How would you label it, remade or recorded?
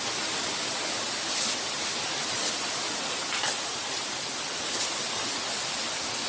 recorded